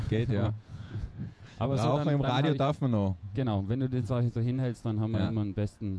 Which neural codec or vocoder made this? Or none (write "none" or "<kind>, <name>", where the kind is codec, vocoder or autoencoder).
vocoder, Vocos